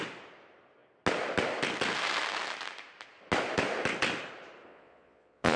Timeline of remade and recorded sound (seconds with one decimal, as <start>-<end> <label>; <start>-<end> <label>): 0.0-4.7 recorded; 4.7-5.6 remade